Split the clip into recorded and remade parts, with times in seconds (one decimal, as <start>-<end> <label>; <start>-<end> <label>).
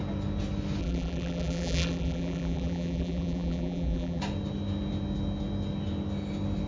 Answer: 0.0-0.8 recorded; 0.8-4.2 remade; 4.2-6.7 recorded